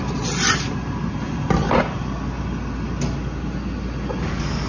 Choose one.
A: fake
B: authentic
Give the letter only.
B